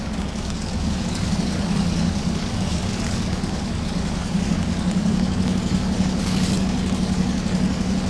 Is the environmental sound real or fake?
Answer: fake